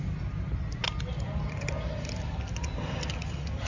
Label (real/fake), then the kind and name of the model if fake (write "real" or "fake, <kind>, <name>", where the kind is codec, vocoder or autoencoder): real